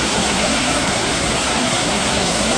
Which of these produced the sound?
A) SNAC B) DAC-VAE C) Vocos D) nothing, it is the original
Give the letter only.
A